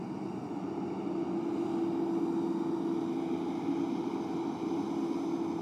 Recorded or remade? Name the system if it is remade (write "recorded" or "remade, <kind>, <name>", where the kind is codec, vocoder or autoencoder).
recorded